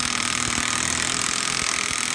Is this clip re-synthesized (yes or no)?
no